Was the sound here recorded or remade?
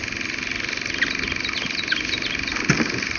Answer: recorded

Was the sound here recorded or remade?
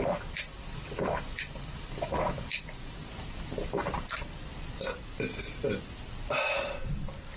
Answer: recorded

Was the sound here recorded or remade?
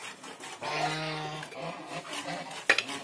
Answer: recorded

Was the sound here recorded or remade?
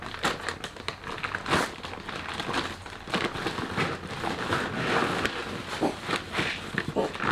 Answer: recorded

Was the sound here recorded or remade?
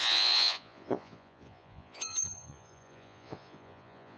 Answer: remade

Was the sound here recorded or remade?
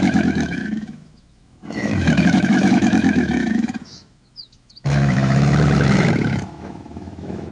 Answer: remade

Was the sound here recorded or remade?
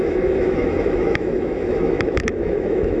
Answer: remade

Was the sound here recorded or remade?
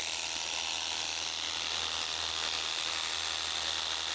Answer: recorded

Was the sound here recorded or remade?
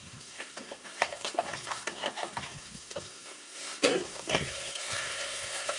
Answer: remade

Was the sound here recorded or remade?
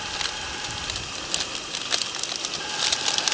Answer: recorded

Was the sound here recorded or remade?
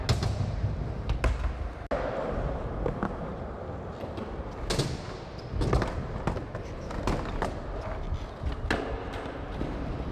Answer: recorded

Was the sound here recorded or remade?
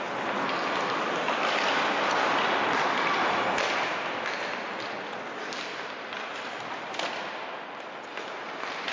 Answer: recorded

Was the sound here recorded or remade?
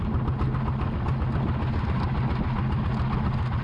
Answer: recorded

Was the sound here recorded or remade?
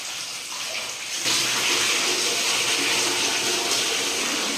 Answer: recorded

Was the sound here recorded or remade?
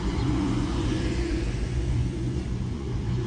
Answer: remade